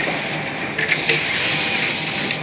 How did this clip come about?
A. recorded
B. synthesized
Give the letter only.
A